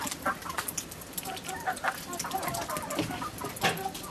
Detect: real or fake real